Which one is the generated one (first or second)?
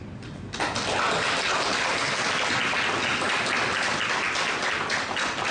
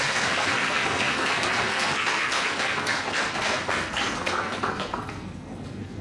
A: second